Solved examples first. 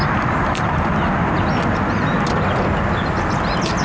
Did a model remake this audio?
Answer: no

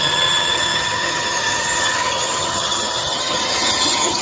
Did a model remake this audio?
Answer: yes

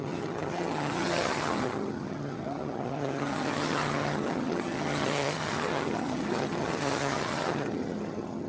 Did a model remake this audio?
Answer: yes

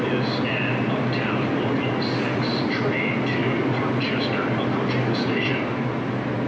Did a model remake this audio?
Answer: no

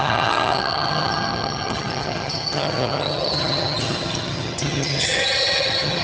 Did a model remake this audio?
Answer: yes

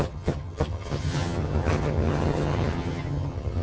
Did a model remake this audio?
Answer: yes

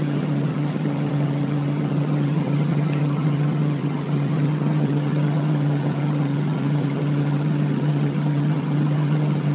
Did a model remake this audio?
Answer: yes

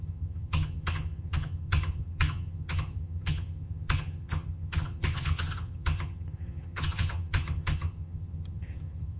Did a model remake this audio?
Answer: yes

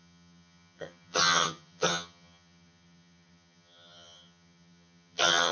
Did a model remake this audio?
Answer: yes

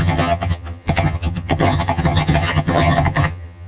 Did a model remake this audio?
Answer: yes